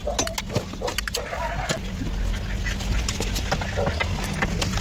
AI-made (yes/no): no